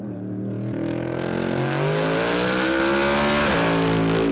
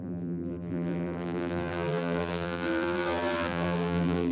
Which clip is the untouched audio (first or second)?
first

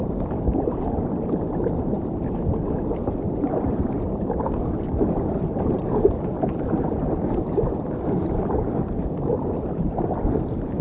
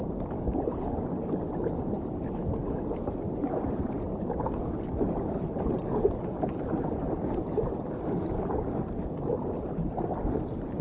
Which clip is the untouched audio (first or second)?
second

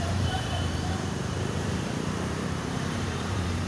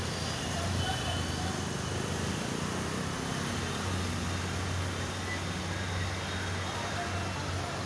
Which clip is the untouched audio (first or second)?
second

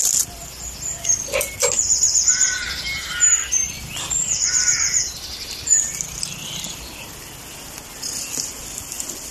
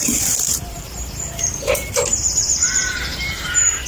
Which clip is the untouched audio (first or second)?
first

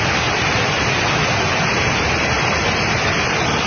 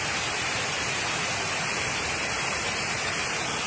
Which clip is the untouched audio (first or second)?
first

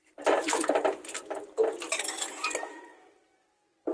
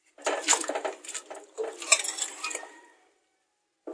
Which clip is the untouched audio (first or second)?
first